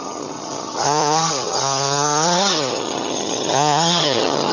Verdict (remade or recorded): remade